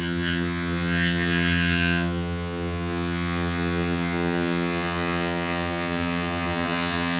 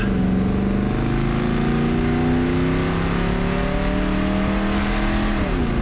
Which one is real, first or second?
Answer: second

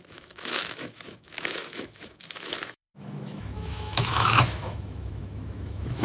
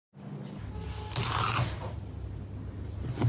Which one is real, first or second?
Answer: second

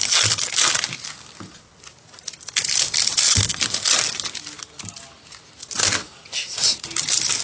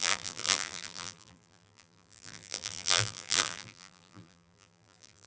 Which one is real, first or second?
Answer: first